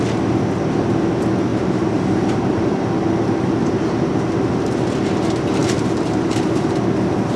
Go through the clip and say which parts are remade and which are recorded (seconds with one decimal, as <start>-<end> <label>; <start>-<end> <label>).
0.0-1.5 recorded; 1.5-2.9 remade; 2.9-7.4 recorded